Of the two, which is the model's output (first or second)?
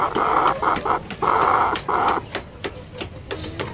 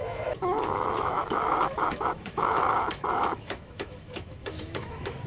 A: second